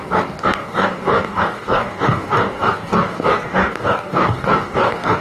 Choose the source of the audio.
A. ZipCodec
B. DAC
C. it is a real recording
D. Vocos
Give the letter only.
B